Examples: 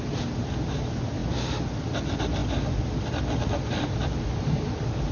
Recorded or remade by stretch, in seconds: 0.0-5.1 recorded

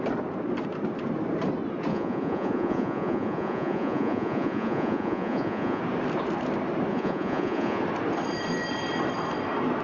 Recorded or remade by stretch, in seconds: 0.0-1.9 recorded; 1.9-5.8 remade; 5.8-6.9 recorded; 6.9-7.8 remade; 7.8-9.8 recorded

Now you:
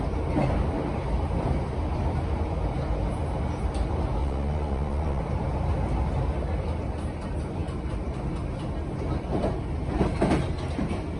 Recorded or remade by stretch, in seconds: 0.0-4.2 recorded; 4.2-5.2 remade; 5.2-11.2 recorded

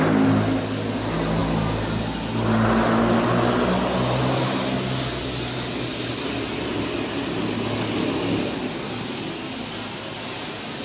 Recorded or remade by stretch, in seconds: 0.0-10.8 recorded